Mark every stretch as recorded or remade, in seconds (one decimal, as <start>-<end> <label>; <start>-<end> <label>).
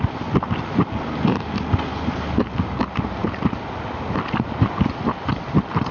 0.0-5.9 recorded